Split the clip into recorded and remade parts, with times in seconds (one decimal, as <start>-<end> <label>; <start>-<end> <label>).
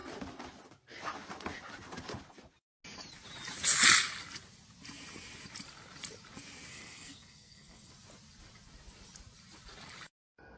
0.0-6.7 recorded; 6.7-7.9 remade; 7.9-10.6 recorded